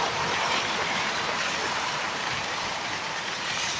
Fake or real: fake